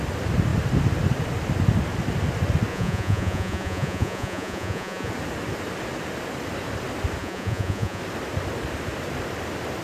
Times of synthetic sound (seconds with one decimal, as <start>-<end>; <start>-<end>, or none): 2.7-5.1; 7.2-8.0